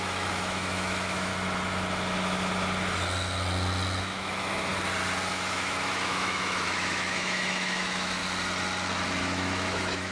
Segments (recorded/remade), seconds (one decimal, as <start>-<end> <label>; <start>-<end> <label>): 0.0-1.3 remade; 1.3-4.0 recorded; 4.0-4.7 remade; 4.7-5.3 recorded; 5.3-8.2 remade; 8.2-9.2 recorded; 9.2-10.1 remade